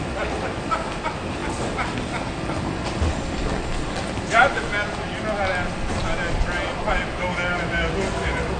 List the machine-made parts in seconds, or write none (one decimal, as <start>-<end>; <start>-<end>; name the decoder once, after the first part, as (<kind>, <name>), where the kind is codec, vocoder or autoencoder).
none